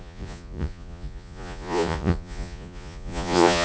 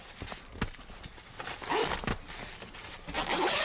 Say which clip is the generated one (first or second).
first